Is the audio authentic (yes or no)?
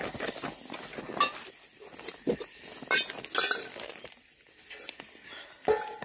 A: yes